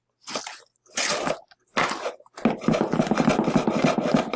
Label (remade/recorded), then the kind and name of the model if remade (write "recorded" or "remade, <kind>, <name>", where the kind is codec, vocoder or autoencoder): recorded